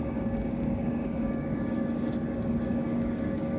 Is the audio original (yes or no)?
no